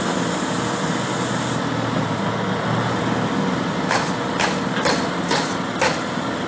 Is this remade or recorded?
recorded